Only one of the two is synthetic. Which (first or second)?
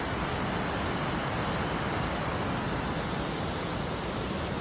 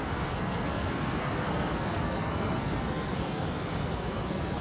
second